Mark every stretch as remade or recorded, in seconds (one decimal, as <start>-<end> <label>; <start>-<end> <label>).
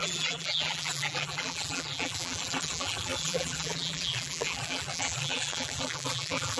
0.0-6.6 remade